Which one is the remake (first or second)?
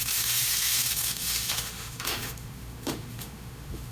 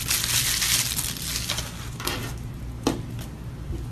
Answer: first